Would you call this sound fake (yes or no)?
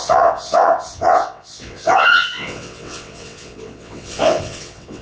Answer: yes